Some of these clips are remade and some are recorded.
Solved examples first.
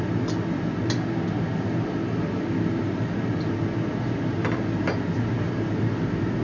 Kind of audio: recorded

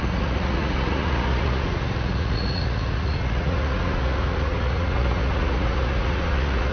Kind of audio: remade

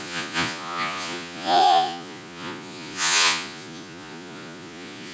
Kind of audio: remade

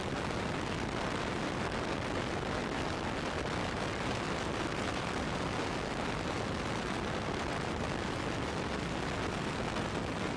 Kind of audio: recorded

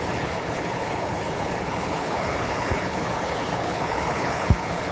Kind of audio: remade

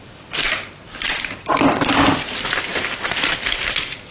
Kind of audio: remade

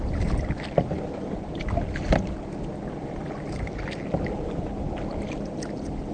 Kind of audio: recorded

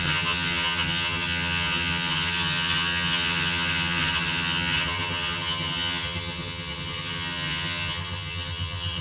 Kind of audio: remade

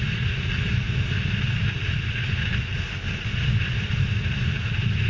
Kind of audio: recorded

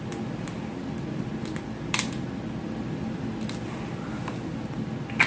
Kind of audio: recorded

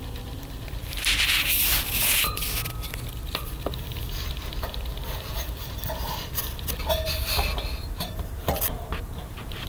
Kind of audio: remade